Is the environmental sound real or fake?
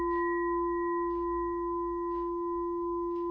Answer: real